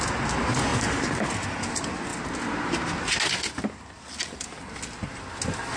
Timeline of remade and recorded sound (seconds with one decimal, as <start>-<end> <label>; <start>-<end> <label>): 0.0-5.8 recorded